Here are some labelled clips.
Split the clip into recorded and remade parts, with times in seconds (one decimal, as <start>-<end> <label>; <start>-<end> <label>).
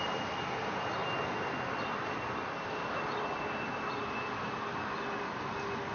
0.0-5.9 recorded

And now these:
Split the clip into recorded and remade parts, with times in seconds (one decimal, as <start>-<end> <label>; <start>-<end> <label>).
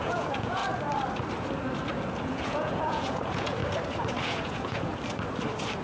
0.0-0.6 remade; 0.6-2.2 recorded; 2.2-3.6 remade; 3.6-4.2 recorded; 4.2-4.9 remade; 4.9-5.8 recorded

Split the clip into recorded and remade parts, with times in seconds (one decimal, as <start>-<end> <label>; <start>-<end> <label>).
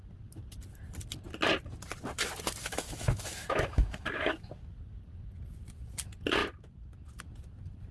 0.0-2.6 recorded; 2.6-4.5 remade; 4.5-7.9 recorded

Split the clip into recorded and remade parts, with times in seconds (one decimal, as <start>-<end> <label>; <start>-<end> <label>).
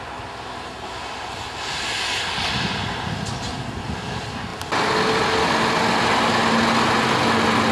0.0-7.7 recorded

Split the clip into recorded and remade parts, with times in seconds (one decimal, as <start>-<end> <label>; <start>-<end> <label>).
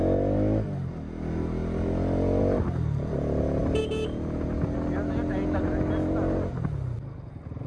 0.0-7.7 recorded